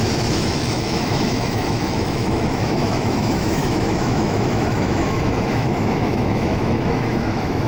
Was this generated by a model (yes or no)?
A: yes